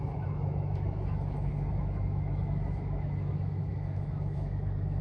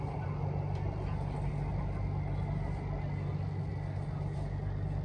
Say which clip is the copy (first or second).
first